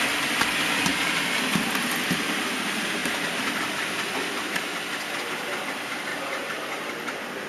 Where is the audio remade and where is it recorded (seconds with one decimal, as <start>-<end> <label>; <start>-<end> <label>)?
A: 0.0-0.9 recorded; 0.9-1.4 remade; 1.4-6.1 recorded; 6.1-6.9 remade; 6.9-7.5 recorded